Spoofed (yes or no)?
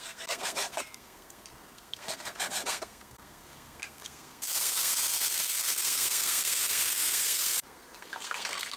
yes